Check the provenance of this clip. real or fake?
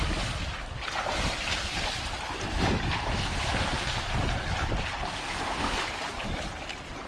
real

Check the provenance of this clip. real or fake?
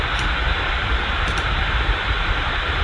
real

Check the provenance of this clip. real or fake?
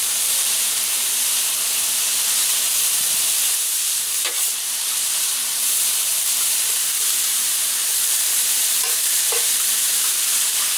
fake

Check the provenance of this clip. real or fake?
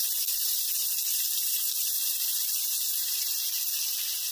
real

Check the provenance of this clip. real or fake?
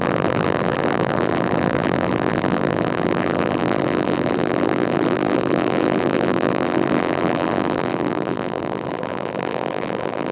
fake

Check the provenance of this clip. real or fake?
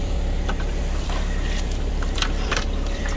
fake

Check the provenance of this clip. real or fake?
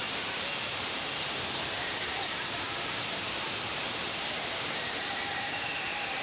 fake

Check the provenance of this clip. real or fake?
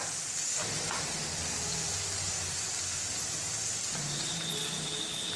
real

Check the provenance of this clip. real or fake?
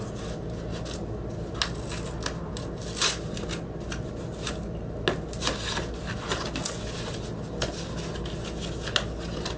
real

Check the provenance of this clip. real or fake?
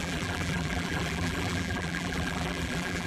fake